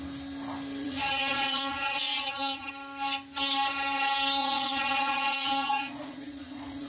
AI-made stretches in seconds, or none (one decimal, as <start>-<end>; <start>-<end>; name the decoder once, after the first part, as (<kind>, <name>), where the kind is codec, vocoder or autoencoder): 0.8-2.7 (vocoder, Vocos); 4.4-6.9